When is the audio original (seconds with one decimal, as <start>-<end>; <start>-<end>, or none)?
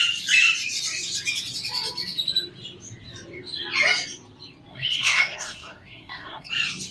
0.0-4.7; 6.5-6.9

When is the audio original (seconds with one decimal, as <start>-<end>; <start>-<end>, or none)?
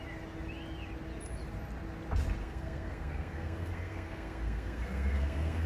0.0-2.4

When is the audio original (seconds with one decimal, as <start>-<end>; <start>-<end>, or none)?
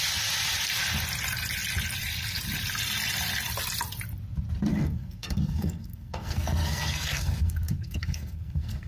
0.0-4.7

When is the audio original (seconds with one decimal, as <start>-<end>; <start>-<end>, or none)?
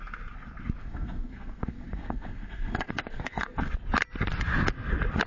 0.0-0.8; 3.7-5.3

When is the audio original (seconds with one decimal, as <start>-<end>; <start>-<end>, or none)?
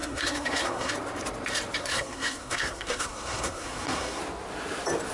0.9-1.8; 4.2-5.1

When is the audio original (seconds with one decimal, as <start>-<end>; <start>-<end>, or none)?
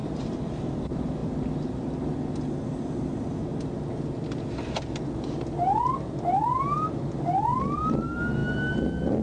0.0-9.2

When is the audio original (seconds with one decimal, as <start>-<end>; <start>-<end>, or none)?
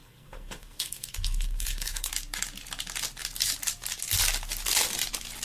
2.1-5.4